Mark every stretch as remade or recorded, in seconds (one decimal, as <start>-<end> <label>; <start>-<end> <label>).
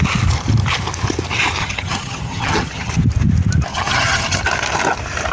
0.0-1.6 recorded; 1.6-2.9 remade; 2.9-3.7 recorded; 3.7-4.4 remade; 4.4-5.3 recorded